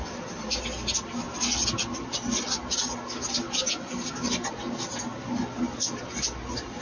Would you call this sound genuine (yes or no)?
yes